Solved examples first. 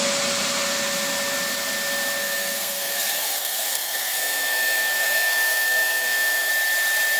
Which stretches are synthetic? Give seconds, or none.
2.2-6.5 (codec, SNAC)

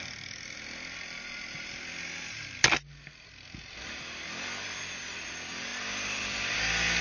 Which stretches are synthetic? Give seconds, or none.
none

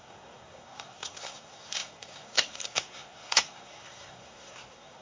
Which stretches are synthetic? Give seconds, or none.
0.0-5.0 (codec, SNAC)

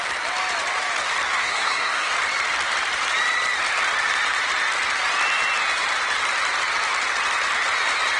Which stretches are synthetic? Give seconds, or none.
1.4-2.1 (codec, SNAC)

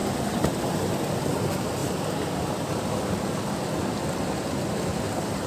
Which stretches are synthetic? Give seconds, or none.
none